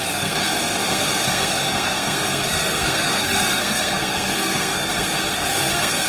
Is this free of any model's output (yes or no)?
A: no